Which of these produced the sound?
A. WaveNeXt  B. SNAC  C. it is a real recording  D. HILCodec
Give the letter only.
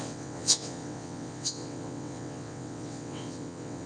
A